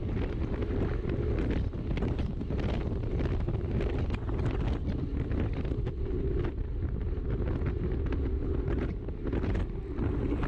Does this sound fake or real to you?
real